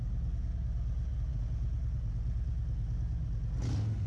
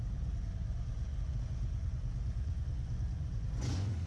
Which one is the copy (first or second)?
second